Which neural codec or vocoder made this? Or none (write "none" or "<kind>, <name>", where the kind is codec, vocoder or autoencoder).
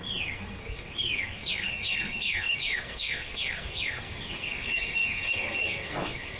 codec, SNAC